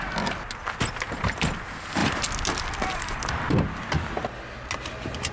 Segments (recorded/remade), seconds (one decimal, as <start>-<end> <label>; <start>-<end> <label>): 0.0-5.3 recorded